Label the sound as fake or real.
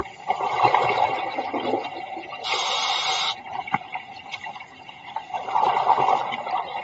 real